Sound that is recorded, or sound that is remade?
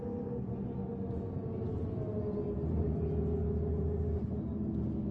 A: recorded